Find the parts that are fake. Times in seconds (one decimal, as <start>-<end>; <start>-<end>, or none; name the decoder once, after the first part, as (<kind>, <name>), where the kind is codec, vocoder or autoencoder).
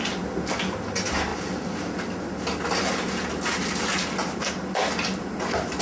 none